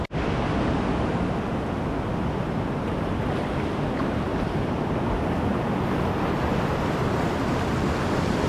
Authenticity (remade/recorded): recorded